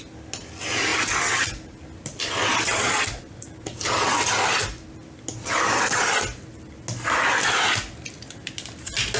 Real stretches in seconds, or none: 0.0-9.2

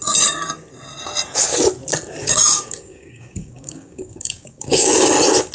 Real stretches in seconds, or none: 0.0-2.2; 5.1-5.5

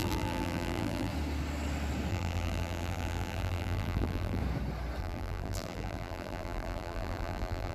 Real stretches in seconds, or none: 1.1-2.1; 4.4-5.0

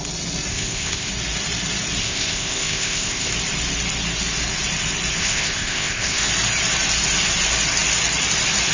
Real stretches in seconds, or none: 0.0-0.5; 1.1-2.0; 3.3-5.2; 6.2-8.7